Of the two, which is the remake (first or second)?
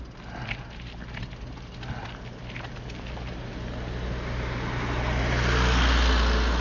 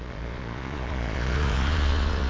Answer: second